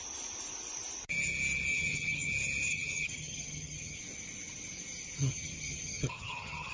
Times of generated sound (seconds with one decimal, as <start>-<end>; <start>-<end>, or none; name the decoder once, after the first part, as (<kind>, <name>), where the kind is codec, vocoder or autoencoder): 1.7-2.3 (vocoder, HiFi-GAN); 2.7-4.0; 5.2-6.7